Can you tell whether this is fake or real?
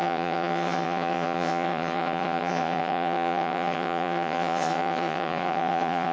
fake